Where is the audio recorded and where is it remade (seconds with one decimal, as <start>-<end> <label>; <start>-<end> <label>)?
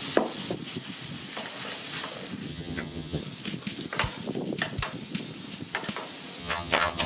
0.0-2.5 recorded; 2.5-3.2 remade; 3.2-6.4 recorded; 6.4-7.1 remade